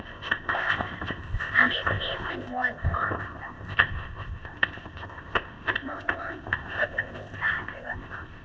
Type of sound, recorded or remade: remade